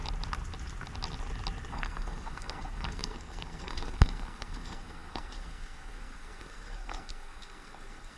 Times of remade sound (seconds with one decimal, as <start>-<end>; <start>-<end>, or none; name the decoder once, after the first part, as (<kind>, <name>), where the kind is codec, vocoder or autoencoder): 1.7-8.2 (codec, SNAC)